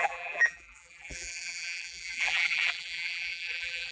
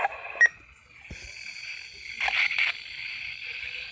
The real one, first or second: second